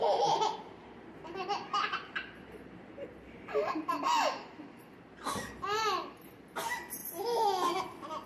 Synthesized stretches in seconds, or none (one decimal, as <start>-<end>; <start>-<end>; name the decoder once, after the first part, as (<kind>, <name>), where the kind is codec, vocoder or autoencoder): none